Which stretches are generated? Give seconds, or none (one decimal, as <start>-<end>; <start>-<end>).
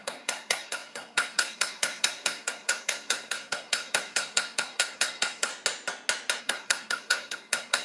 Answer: 0.0-5.5; 6.4-7.8